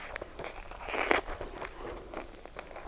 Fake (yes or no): no